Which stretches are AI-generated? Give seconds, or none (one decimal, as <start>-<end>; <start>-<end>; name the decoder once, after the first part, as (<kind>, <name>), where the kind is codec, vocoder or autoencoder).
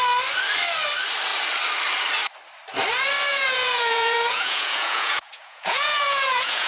3.3-6.7 (vocoder, Vocos)